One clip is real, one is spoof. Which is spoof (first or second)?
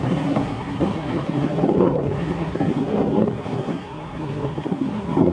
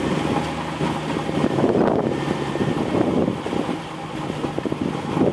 first